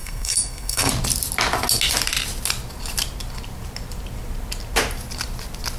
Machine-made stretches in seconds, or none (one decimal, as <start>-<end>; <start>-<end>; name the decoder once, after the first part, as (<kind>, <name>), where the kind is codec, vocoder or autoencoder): 0.0-0.9 (codec, SNAC)